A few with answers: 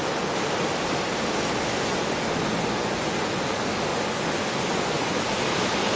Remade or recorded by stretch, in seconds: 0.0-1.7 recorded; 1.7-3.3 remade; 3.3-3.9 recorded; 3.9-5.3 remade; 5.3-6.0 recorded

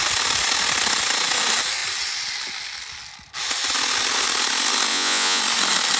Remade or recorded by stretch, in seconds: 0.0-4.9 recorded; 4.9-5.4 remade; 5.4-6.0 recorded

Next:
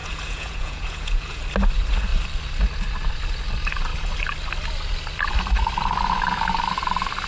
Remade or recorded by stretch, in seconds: 0.0-1.4 remade; 1.4-7.3 recorded

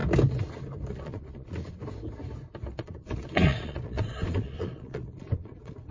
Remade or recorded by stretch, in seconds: 0.0-0.9 recorded; 0.9-1.8 remade; 1.8-2.7 recorded; 2.7-5.9 remade

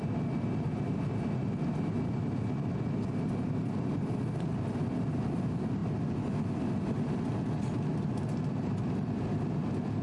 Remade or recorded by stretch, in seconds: 0.0-10.0 recorded